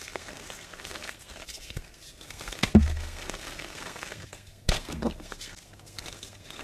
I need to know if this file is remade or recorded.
remade